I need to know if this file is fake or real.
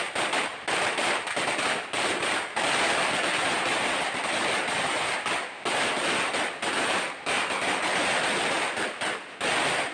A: real